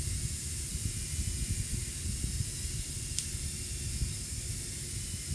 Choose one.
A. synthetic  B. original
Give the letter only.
B